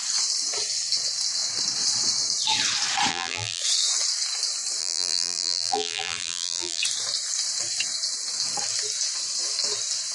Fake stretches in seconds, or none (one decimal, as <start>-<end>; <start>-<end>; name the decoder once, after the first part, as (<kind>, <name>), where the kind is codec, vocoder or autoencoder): 3.1-3.6 (vocoder, BigVGAN v2); 4.8-6.8